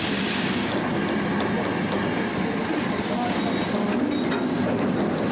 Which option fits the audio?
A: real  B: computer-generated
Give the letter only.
A